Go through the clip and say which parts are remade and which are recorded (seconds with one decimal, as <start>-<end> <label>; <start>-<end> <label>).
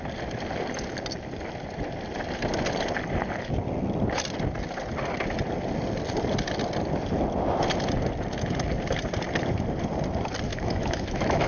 0.0-10.5 recorded; 10.5-11.5 remade